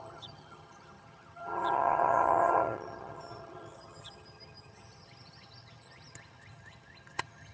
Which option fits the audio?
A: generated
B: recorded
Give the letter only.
A